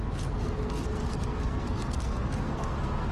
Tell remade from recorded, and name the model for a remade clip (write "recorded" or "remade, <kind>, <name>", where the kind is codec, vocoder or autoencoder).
remade, codec, SNAC